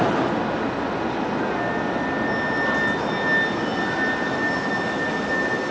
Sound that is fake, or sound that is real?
real